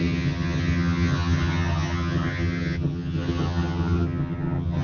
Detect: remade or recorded remade